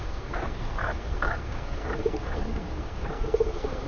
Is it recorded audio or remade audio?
remade